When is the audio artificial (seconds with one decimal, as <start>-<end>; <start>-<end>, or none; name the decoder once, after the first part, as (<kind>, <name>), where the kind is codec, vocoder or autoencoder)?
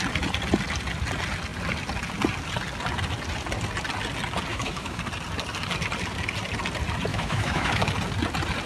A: 4.5-5.0 (autoencoder, DAC-VAE); 7.1-7.9